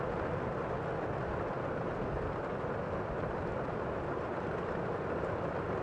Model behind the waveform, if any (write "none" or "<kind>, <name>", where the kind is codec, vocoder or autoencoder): none